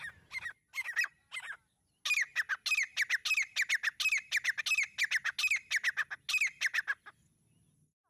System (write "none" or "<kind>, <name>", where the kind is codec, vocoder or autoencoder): none